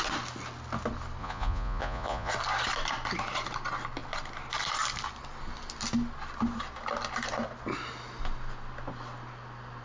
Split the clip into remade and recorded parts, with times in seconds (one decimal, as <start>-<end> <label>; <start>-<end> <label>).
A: 0.0-1.2 recorded; 1.2-2.3 remade; 2.3-9.8 recorded